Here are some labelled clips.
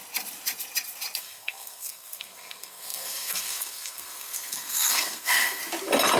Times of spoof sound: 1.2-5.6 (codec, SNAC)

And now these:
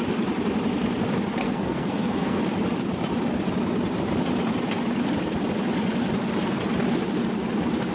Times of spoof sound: 1.4-2.4 (codec, SNAC)

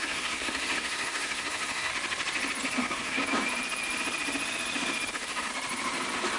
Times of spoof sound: 0.0-1.9 (codec, SNAC); 2.8-3.2; 5.1-5.5

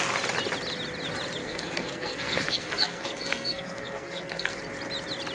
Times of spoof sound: 1.4-4.6 (codec, SNAC)

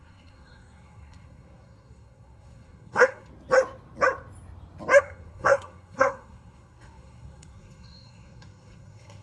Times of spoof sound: 0.0-3.3 (codec, SNAC); 5.0-9.2